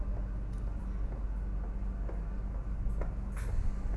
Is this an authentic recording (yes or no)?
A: yes